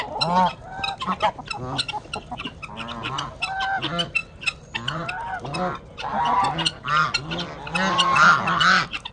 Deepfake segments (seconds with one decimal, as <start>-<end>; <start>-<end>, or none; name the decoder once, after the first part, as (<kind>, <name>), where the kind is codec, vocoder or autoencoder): none